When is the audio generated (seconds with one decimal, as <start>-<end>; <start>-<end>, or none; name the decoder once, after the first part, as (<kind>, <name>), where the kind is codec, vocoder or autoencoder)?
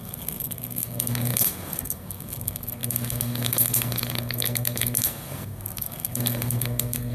0.0-7.1 (codec, SNAC)